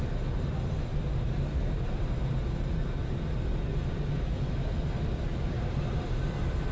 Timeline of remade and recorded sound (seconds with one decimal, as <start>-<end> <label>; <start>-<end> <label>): 0.0-0.9 recorded; 0.9-2.2 remade; 2.2-5.3 recorded; 5.3-6.7 remade